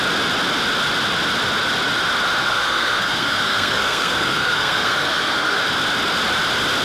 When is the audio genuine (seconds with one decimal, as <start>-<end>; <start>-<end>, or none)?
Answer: 0.0-2.4; 5.6-6.8